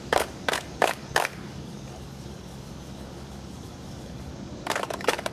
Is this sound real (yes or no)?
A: no